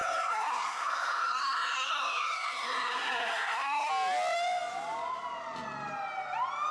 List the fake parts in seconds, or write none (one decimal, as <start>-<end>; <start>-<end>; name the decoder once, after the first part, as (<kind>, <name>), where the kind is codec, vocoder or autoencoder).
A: 0.0-3.9 (codec, SNAC)